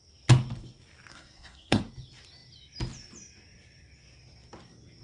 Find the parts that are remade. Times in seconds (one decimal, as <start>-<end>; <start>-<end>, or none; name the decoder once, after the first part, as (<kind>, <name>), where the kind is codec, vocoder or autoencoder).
1.1-1.8 (codec, SNAC)